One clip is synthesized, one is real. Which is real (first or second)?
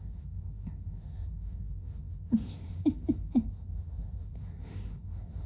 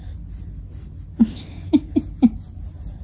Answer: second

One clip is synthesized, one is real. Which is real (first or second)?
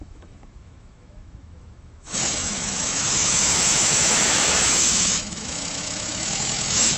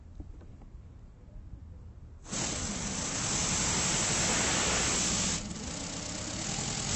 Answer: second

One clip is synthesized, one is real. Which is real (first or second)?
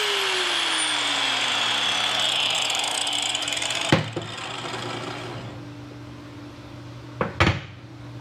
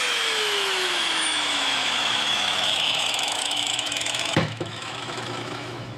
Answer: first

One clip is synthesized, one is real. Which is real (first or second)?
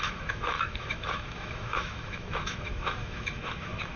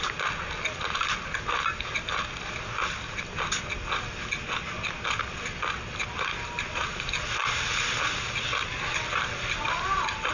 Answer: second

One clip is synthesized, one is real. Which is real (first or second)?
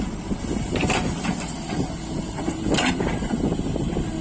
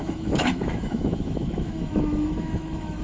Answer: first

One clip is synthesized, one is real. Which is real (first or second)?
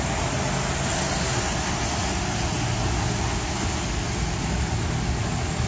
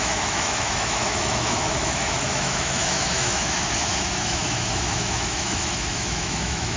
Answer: first